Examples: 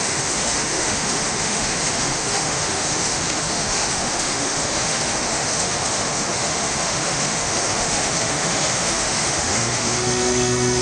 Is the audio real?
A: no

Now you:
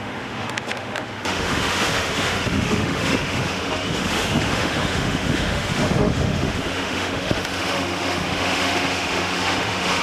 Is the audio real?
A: no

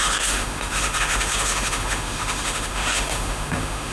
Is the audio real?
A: no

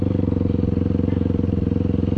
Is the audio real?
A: yes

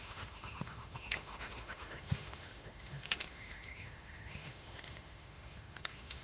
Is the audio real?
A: no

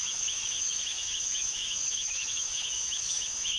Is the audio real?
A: no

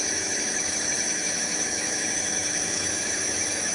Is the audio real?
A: no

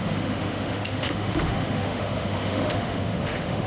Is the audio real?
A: no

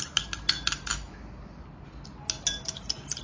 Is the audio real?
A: yes